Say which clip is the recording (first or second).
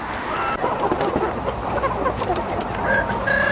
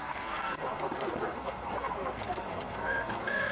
first